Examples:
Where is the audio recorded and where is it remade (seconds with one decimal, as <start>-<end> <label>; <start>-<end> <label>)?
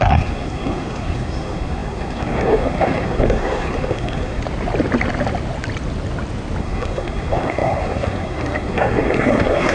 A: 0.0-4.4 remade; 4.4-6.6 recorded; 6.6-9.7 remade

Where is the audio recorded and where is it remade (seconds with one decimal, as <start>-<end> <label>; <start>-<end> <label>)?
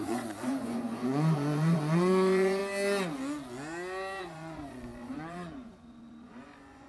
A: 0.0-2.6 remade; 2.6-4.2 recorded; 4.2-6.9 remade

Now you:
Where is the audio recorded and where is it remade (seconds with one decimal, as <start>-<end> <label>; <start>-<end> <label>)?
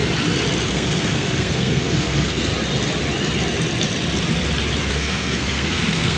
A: 0.0-0.7 recorded; 0.7-2.5 remade; 2.5-4.9 recorded; 4.9-6.2 remade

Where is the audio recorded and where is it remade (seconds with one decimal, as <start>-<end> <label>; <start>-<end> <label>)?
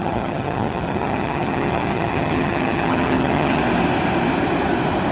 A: 0.0-3.6 remade; 3.6-5.1 recorded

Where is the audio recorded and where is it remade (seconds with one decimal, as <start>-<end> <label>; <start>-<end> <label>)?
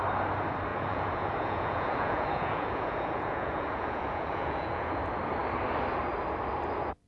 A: 0.0-0.7 recorded; 0.7-5.0 remade; 5.0-7.1 recorded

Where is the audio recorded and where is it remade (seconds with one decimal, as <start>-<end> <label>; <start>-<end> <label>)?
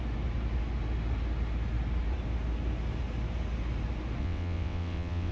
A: 0.0-4.2 recorded; 4.2-5.3 remade